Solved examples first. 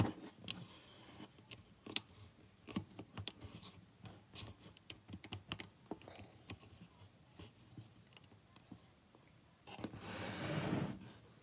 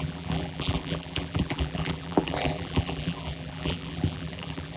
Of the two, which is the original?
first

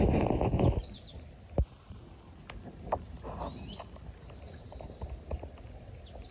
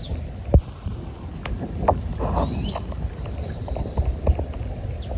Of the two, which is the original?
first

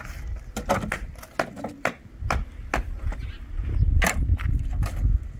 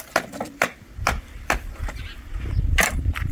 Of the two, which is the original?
first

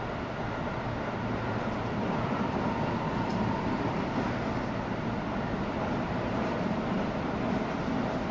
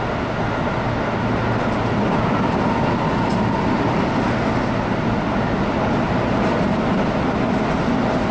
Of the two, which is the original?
second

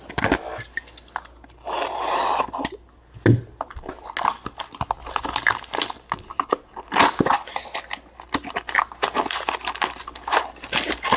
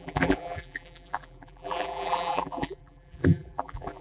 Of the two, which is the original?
first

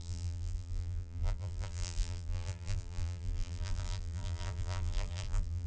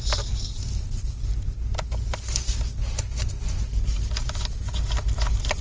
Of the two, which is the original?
second